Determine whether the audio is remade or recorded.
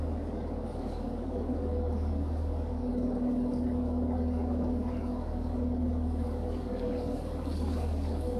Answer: remade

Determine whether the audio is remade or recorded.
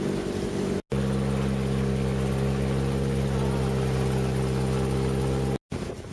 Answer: recorded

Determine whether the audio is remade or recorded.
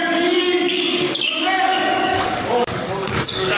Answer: remade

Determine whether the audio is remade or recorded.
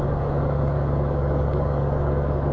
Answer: remade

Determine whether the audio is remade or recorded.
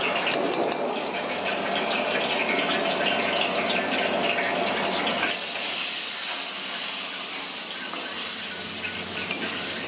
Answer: recorded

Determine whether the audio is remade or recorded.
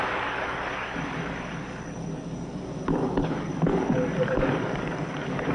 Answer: remade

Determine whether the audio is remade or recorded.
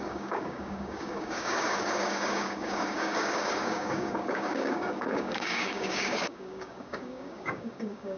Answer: remade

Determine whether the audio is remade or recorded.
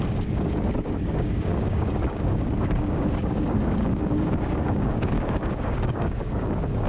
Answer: remade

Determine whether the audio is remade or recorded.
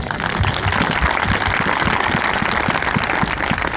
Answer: recorded